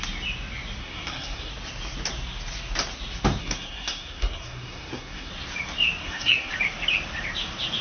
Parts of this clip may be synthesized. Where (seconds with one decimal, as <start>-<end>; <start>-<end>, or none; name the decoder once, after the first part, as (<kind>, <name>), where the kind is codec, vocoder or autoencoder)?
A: 0.8-1.5 (codec, SNAC); 3.4-5.3; 6.0-6.5